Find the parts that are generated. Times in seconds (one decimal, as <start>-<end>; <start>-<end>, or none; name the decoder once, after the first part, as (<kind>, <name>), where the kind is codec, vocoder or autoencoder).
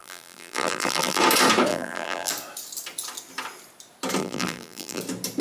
0.0-1.2 (vocoder, BigVGAN v2); 1.7-2.3; 4.2-5.0